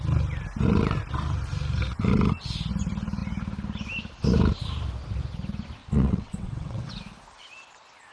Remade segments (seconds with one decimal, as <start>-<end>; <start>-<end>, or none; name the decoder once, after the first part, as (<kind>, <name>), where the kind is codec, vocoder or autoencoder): 5.8-6.9 (vocoder, WaveNeXt)